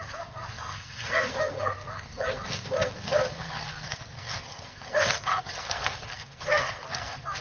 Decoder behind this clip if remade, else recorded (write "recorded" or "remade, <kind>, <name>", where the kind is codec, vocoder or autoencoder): remade, codec, SNAC